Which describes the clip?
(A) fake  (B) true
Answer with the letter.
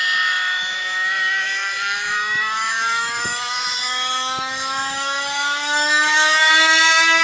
A